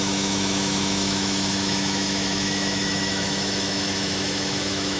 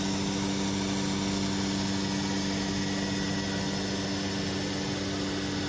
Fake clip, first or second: first